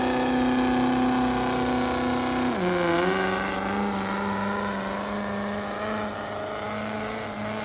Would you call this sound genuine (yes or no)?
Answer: yes